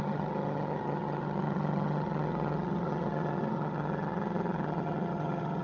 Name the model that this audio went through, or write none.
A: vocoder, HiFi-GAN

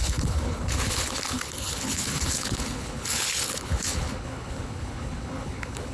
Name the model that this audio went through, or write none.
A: codec, HILCodec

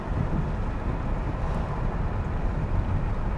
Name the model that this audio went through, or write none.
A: none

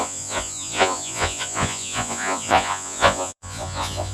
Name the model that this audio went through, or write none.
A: vocoder, Vocos